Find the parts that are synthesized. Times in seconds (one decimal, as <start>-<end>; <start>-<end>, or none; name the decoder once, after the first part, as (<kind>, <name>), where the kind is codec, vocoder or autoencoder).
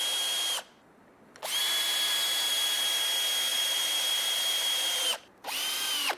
1.6-3.0 (vocoder, BigVGAN v2); 3.5-6.2